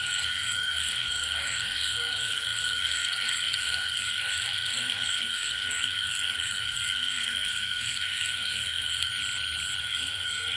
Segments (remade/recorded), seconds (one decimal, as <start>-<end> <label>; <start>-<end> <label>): 0.0-9.1 remade; 9.1-9.8 recorded; 9.8-10.6 remade